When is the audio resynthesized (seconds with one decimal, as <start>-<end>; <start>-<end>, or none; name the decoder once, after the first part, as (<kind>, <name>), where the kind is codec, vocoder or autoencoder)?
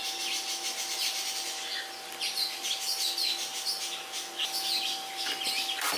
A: none